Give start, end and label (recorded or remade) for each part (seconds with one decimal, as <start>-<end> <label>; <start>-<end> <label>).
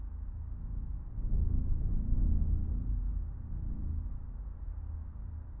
0.0-5.6 recorded